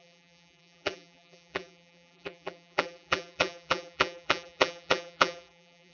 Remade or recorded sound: remade